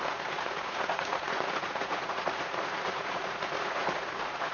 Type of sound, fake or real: fake